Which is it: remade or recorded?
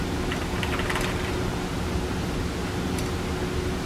recorded